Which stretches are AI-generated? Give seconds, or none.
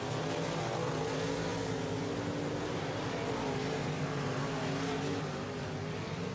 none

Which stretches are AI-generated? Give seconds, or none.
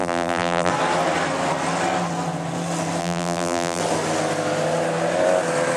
0.0-0.7; 3.0-3.8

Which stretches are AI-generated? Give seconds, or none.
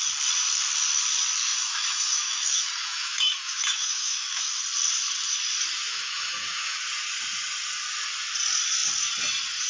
1.5-4.6; 5.9-6.8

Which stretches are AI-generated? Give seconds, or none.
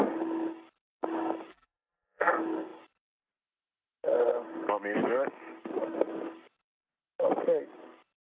1.5-2.3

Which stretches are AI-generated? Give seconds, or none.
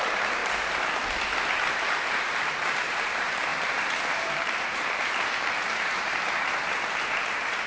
0.0-0.4; 1.8-7.7